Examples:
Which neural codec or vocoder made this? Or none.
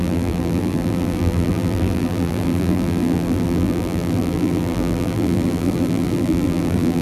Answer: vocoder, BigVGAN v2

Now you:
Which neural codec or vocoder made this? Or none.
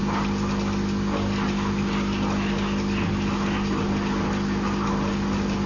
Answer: none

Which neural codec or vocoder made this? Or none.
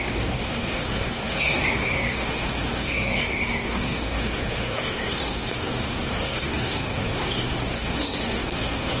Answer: codec, SNAC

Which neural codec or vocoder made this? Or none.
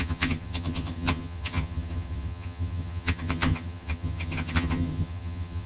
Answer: vocoder, HiFi-GAN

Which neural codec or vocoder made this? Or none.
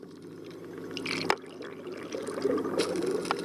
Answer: none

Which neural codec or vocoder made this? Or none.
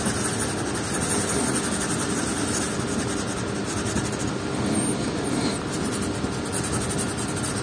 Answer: none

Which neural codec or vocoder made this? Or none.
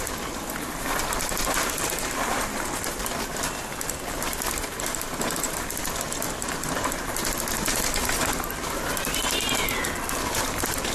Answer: none